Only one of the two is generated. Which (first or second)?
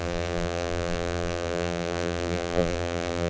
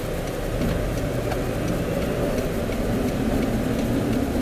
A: first